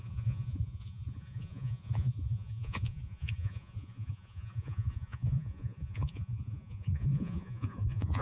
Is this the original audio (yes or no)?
no